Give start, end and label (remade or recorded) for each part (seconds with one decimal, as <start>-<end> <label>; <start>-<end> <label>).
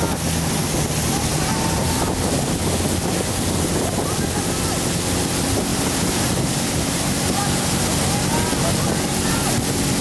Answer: 0.0-5.7 recorded; 5.7-7.8 remade; 7.8-10.0 recorded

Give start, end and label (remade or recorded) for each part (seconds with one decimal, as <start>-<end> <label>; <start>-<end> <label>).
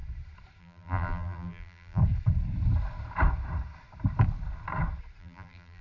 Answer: 0.0-0.6 recorded; 0.6-2.0 remade; 2.0-5.2 recorded; 5.2-5.8 remade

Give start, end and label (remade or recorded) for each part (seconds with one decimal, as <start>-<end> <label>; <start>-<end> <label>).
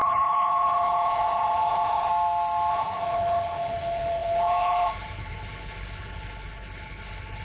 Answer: 0.0-2.1 remade; 2.1-2.7 recorded; 2.7-7.4 remade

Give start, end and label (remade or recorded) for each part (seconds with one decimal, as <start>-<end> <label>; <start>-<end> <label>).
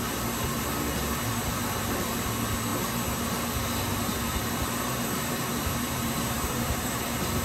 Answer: 0.0-4.2 recorded; 4.2-6.9 remade; 6.9-7.4 recorded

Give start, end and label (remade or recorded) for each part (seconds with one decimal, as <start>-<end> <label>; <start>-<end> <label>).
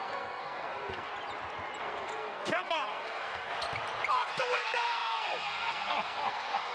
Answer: 0.0-1.1 remade; 1.1-1.8 recorded; 1.8-3.5 remade; 3.5-4.1 recorded; 4.1-6.7 remade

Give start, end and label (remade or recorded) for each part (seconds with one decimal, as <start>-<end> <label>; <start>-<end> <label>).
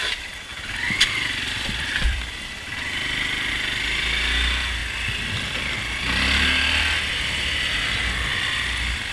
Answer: 0.0-0.5 recorded; 0.5-3.5 remade; 3.5-4.8 recorded; 4.8-6.7 remade; 6.7-8.3 recorded; 8.3-9.1 remade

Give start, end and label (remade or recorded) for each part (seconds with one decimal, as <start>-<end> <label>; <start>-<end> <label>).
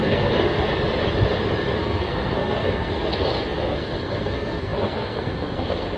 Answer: 0.0-0.7 remade; 0.7-1.8 recorded; 1.8-6.0 remade